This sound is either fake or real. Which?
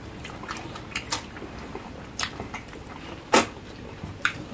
fake